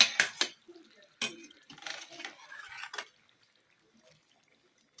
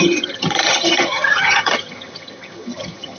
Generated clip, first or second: second